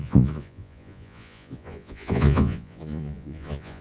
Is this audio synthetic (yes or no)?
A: yes